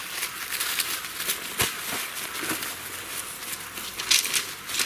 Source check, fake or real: real